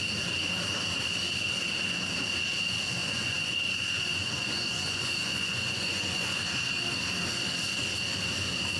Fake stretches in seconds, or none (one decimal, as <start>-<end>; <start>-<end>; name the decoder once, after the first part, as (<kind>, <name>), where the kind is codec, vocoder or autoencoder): 3.0-6.4 (vocoder, Vocos)